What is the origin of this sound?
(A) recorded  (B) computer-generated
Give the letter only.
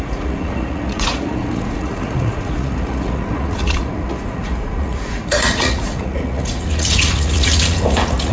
B